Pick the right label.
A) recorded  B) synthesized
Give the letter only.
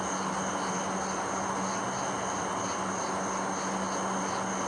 A